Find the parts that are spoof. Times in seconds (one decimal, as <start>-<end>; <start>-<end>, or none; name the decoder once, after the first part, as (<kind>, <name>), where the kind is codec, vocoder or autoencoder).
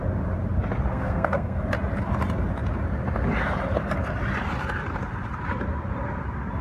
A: 0.9-1.6 (codec, SNAC)